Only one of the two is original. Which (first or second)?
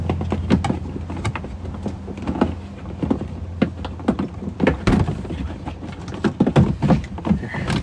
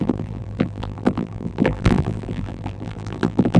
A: first